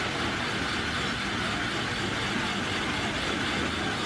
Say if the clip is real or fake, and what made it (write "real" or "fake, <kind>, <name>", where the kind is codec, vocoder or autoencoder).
real